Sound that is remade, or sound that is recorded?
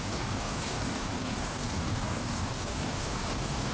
remade